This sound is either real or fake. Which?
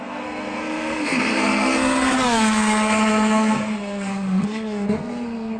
fake